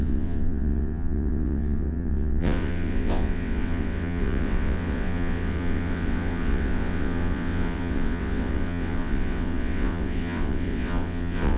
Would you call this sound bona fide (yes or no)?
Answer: no